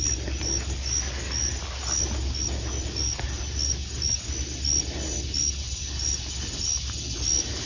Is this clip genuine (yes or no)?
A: yes